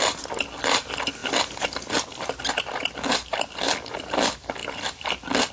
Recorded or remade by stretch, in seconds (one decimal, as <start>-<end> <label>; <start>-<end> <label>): 0.0-5.5 recorded